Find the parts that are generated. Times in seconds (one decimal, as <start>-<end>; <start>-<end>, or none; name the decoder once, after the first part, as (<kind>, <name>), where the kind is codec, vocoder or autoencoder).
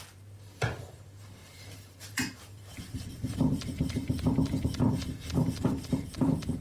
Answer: 0.0-4.0 (vocoder, BigVGAN v2); 4.6-6.6